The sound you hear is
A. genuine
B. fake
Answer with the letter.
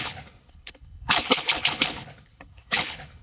B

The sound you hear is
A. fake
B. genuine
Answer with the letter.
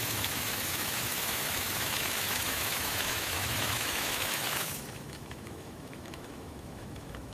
A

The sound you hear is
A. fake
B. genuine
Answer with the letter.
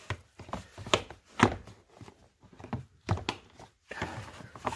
B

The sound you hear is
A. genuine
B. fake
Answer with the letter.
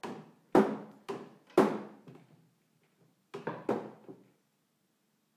A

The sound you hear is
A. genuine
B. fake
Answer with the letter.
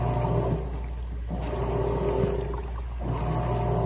A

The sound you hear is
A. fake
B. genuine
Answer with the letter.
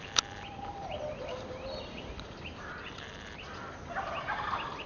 B